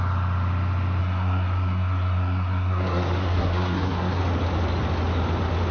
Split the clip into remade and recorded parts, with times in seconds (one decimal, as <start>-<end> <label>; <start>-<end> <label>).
0.0-1.0 recorded; 1.0-4.2 remade; 4.2-5.7 recorded